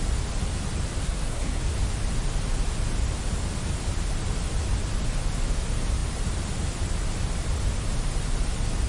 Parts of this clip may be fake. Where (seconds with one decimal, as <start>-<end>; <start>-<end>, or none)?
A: 1.0-1.6